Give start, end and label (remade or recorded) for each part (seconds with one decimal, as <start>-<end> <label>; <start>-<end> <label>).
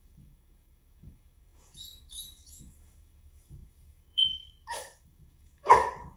0.0-6.2 remade